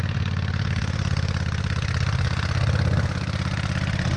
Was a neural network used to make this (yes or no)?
no